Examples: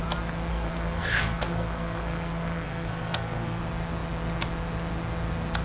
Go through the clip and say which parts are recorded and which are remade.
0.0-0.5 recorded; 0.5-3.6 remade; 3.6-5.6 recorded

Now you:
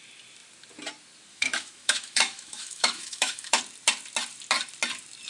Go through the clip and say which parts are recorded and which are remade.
0.0-1.3 recorded; 1.3-3.6 remade; 3.6-5.3 recorded

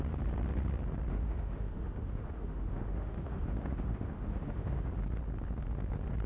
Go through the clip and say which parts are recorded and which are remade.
0.0-1.1 recorded; 1.1-4.9 remade; 4.9-6.3 recorded

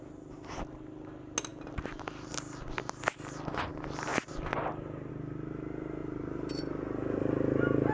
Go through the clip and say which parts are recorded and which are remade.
0.0-6.0 recorded; 6.0-6.6 remade; 6.6-7.9 recorded

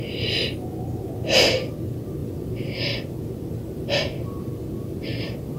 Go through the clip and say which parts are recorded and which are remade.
0.0-2.2 recorded; 2.2-5.6 remade

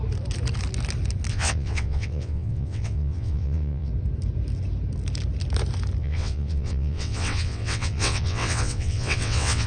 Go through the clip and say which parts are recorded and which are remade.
0.0-1.3 recorded; 1.3-3.9 remade; 3.9-6.0 recorded; 6.0-9.7 remade

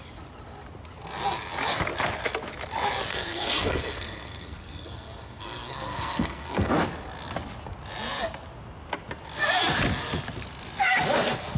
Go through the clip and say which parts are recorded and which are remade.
0.0-3.1 recorded; 3.1-6.7 remade; 6.7-11.6 recorded